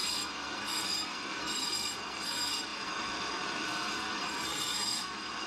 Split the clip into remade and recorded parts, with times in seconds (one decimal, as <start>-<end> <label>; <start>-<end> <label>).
0.0-5.5 remade